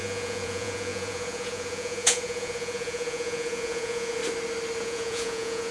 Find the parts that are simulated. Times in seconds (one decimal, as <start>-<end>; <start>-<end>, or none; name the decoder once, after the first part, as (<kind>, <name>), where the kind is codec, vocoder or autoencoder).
0.0-4.2 (vocoder, Vocos); 4.8-5.7

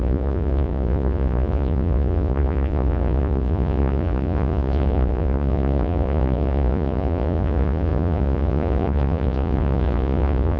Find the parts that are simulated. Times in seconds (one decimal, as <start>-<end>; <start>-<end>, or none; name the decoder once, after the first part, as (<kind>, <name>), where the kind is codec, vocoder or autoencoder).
0.0-10.6 (vocoder, Vocos)